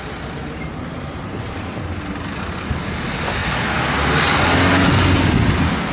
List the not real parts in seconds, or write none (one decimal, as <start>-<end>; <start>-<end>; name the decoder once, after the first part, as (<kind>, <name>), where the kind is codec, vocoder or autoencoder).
none